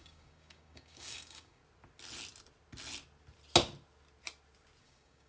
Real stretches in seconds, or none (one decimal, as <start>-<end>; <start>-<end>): 1.6-4.8

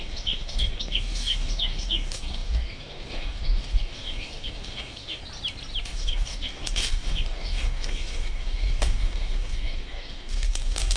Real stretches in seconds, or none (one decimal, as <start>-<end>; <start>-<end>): 5.2-5.8

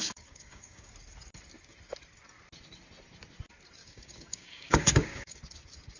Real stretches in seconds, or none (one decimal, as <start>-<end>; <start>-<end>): 0.9-3.8; 5.4-6.0

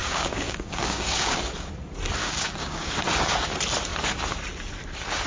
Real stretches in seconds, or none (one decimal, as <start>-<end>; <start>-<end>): 1.4-2.2; 2.9-5.3